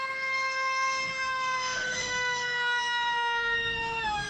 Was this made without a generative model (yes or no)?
no